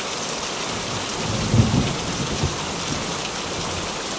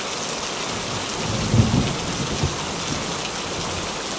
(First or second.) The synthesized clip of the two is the first